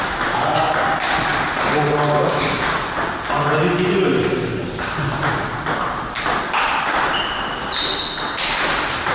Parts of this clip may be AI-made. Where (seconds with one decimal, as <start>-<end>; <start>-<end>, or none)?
1.3-3.6; 4.1-5.4